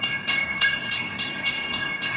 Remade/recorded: remade